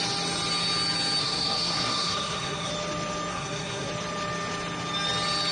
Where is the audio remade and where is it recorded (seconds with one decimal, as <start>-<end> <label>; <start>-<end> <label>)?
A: 0.0-1.2 recorded; 1.2-2.7 remade; 2.7-3.3 recorded; 3.3-3.9 remade; 3.9-5.5 recorded